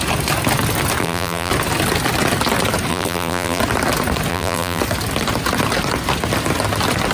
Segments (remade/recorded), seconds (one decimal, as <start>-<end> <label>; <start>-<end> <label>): 0.0-1.0 recorded; 1.0-1.5 remade; 1.5-2.9 recorded; 2.9-3.6 remade; 3.6-4.3 recorded; 4.3-4.8 remade; 4.8-7.1 recorded